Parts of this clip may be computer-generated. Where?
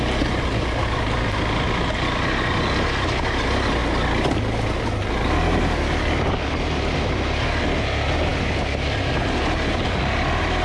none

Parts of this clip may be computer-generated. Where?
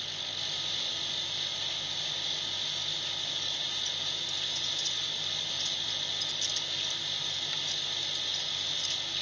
none